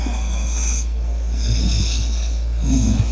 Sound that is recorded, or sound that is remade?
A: remade